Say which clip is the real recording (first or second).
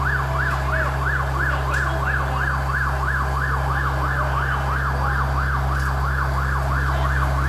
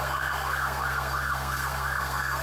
first